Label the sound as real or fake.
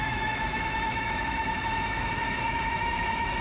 fake